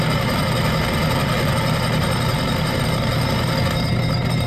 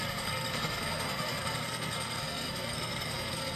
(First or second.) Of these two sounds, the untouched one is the first